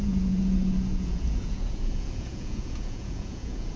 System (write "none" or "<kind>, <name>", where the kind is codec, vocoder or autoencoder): vocoder, Vocos